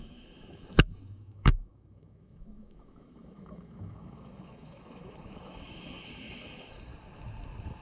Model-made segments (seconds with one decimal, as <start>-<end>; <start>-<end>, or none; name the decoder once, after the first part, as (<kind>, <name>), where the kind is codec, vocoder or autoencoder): 0.0-6.9 (autoencoder, DAC-VAE)